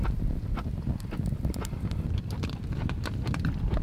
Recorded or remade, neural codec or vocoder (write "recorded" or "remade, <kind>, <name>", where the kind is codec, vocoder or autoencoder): remade, vocoder, BigVGAN v2